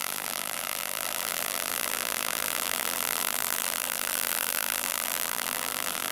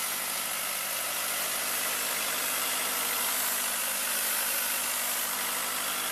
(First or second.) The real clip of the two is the second